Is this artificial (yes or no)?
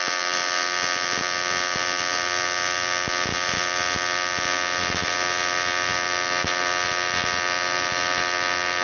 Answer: no